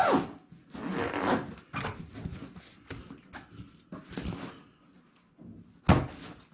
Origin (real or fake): real